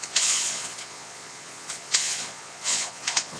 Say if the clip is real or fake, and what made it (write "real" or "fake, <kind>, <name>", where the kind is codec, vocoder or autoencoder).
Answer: fake, vocoder, Vocos